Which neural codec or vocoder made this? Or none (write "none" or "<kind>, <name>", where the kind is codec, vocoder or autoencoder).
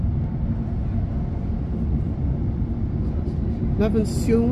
none